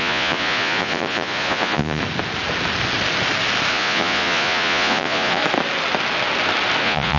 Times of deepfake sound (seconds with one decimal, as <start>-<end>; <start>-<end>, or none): 0.0-2.0; 3.7-5.4; 6.8-7.2